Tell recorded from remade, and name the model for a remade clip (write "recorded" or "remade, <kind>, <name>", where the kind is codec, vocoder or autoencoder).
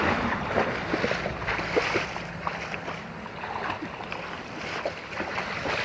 recorded